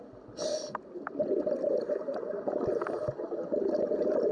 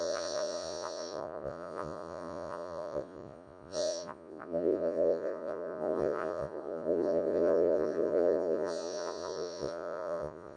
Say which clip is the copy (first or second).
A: second